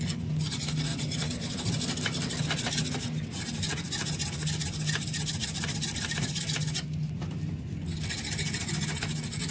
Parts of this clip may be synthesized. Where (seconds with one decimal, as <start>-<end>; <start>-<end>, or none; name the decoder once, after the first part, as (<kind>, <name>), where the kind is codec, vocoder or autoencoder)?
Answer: none

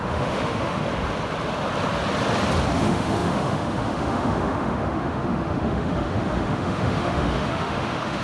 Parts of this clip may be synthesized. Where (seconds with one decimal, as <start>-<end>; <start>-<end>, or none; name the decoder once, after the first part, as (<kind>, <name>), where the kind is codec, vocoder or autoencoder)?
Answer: 0.0-0.8 (autoencoder, DAC-VAE); 2.8-8.2

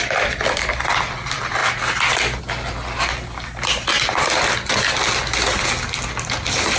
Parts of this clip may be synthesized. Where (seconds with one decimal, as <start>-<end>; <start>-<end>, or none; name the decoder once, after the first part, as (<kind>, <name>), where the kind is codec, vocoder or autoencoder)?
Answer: none

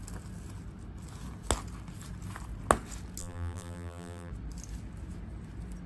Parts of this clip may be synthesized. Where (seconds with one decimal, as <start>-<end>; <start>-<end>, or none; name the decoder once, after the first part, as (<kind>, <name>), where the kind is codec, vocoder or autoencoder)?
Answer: 3.2-4.3 (vocoder, BigVGAN v2)